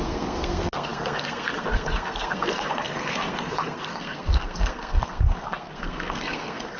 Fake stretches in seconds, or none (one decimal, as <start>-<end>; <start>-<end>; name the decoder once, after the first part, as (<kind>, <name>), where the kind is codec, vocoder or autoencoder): 0.0-6.8 (codec, SNAC)

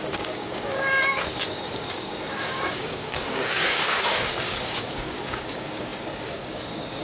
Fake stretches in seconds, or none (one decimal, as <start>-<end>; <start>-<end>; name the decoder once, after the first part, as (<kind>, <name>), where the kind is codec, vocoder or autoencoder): 0.0-7.0 (codec, DAC)

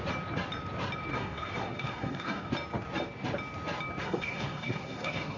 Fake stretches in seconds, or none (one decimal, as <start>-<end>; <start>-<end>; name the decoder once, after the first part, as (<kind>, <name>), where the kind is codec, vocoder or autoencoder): 1.1-2.5 (codec, SNAC); 4.0-5.4